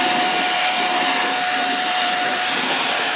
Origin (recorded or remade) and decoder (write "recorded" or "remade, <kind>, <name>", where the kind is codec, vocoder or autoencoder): remade, vocoder, BigVGAN v2